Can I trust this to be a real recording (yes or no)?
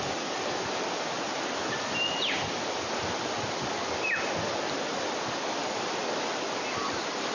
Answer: yes